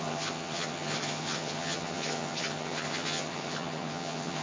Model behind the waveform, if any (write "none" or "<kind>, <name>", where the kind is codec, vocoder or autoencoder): vocoder, HiFi-GAN